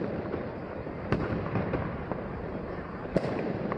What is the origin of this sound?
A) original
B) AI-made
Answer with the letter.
A